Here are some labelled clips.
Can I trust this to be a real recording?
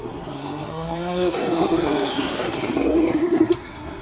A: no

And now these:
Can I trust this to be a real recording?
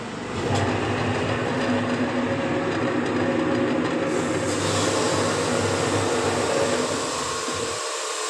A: yes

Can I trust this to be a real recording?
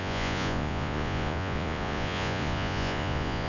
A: no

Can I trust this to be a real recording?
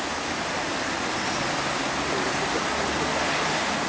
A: yes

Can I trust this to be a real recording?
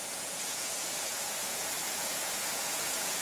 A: no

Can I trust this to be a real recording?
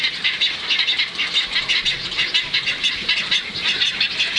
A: yes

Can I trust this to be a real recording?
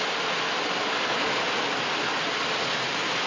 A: yes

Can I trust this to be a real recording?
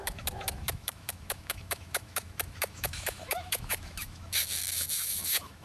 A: no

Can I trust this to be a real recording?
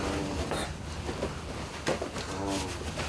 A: yes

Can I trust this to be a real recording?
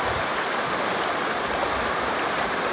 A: yes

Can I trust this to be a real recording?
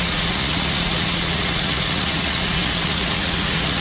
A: no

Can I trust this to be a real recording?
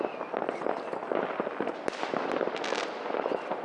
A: yes